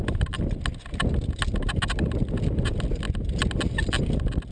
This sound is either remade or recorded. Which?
recorded